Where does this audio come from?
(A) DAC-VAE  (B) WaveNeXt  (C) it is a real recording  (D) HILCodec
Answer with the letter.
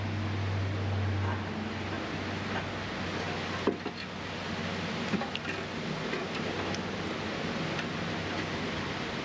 C